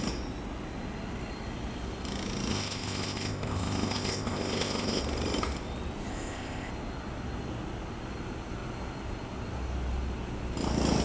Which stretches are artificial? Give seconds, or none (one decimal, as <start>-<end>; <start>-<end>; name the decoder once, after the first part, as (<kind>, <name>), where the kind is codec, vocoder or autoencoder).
2.5-5.0 (codec, ZipCodec); 6.1-6.7